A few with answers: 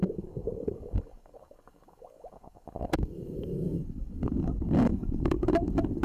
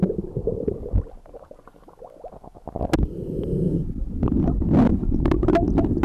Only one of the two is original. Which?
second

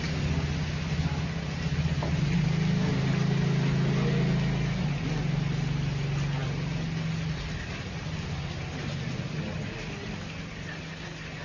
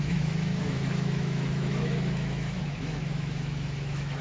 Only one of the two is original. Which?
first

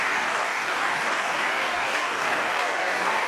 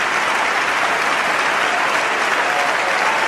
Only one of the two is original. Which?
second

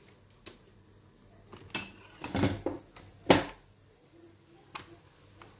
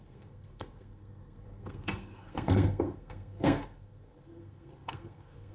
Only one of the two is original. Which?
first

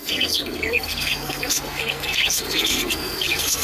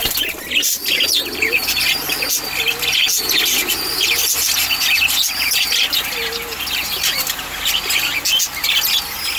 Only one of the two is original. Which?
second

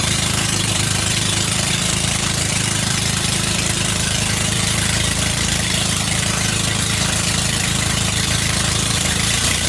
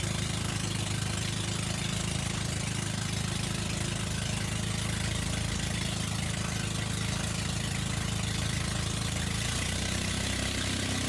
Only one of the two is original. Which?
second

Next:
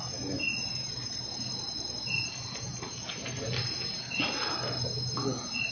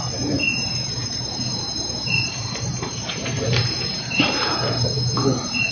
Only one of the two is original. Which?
first